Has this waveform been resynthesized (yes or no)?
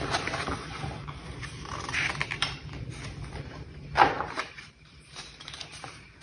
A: yes